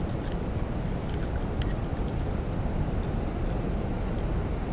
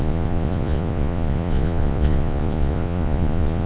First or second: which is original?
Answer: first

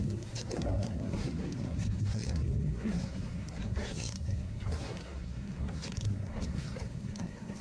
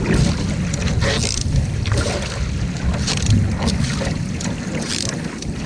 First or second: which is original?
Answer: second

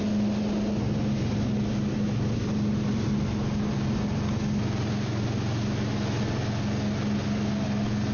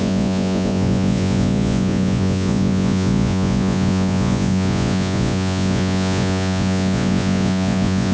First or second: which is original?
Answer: first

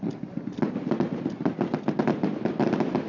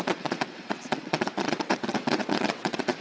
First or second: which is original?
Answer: first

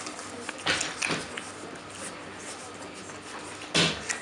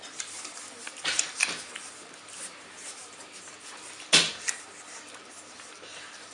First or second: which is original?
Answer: first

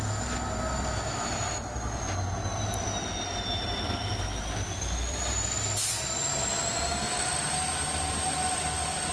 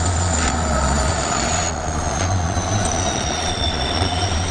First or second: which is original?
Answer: first